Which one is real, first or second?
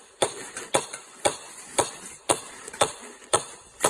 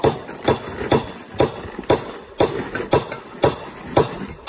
second